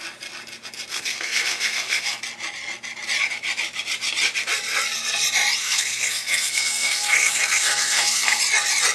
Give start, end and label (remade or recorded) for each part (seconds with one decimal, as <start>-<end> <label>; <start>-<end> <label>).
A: 0.0-0.9 recorded; 0.9-2.2 remade; 2.2-5.6 recorded; 5.6-8.4 remade; 8.4-8.9 recorded